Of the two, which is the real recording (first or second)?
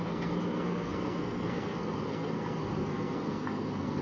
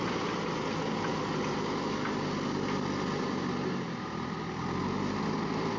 second